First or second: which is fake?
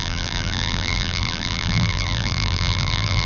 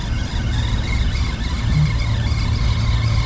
first